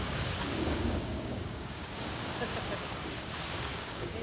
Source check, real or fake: fake